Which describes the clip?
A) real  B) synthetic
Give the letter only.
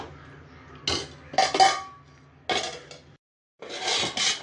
A